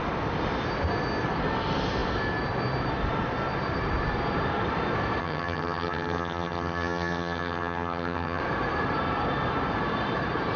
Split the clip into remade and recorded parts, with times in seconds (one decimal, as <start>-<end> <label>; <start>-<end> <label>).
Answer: 0.0-5.2 recorded; 5.2-8.4 remade; 8.4-10.6 recorded